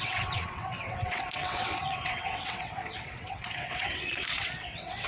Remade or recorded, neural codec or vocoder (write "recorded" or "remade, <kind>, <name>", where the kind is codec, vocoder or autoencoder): remade, vocoder, WaveNeXt